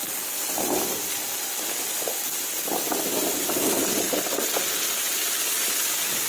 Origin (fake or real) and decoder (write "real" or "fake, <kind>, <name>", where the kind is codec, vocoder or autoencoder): real